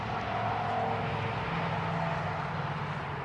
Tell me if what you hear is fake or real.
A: real